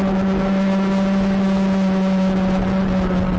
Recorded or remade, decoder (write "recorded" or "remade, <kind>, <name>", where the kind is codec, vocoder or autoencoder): recorded